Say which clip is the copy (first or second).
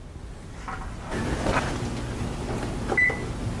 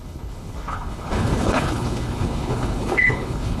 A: second